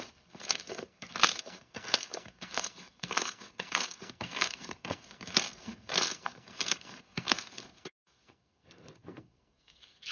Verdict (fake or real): fake